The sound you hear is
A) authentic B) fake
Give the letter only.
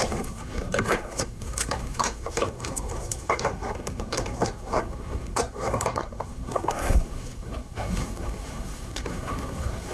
B